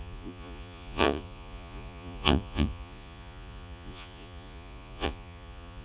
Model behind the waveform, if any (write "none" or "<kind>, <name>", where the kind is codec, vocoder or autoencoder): vocoder, Vocos